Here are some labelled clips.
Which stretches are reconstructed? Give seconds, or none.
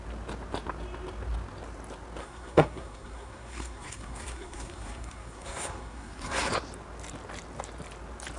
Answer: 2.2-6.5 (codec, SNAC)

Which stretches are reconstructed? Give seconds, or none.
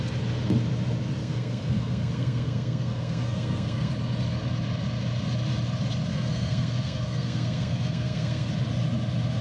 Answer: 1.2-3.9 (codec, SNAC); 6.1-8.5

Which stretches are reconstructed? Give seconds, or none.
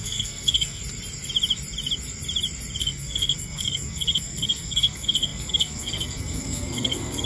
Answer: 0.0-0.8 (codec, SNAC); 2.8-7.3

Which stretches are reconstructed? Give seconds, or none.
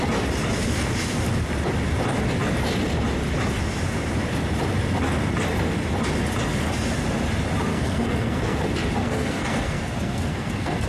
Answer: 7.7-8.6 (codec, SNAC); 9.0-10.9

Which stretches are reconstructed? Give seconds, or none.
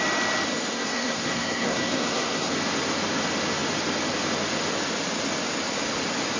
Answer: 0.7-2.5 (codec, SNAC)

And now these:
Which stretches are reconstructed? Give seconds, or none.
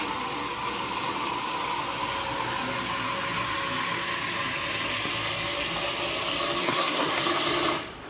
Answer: 6.6-7.2 (codec, SNAC)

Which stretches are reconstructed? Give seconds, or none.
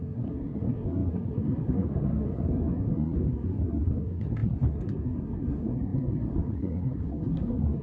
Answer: 0.0-7.8 (codec, SNAC)